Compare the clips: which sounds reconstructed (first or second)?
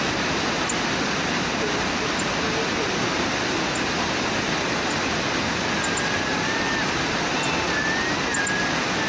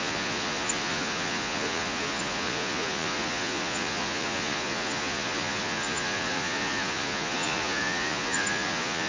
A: second